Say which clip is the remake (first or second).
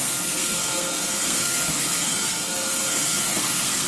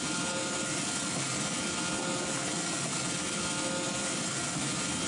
first